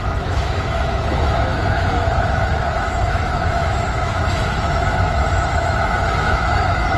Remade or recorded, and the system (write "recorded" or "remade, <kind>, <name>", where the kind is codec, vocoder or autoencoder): remade, autoencoder, DAC-VAE